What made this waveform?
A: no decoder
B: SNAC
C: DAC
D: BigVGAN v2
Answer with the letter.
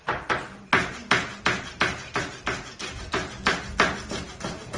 A